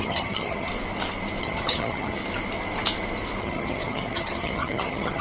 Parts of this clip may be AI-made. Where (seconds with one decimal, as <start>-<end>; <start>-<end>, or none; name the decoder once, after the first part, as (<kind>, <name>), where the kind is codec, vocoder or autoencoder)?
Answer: 0.0-0.7 (vocoder, HiFi-GAN); 1.4-2.2; 3.4-5.2